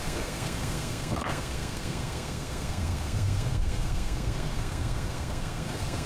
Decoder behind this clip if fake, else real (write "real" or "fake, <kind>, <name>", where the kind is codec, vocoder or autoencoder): fake, codec, SNAC